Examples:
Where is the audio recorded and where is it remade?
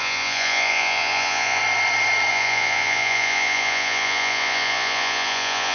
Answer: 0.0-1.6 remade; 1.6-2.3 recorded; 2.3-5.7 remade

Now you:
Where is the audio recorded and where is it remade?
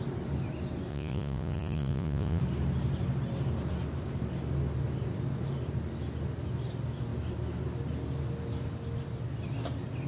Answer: 0.0-0.9 recorded; 0.9-2.4 remade; 2.4-10.1 recorded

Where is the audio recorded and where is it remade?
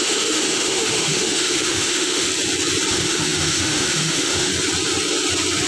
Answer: 0.0-2.3 remade; 2.3-2.9 recorded; 2.9-4.5 remade; 4.5-5.7 recorded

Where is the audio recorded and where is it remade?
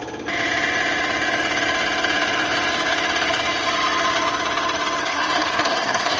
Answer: 0.0-5.0 recorded; 5.0-6.2 remade